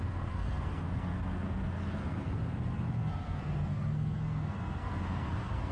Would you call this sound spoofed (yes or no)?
yes